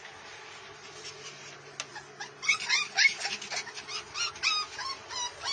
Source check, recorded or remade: recorded